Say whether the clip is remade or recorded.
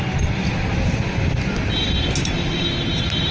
recorded